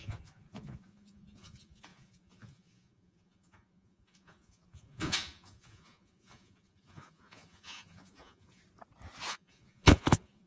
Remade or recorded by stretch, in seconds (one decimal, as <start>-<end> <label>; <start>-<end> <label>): 0.0-8.6 remade; 8.6-9.3 recorded; 9.3-10.5 remade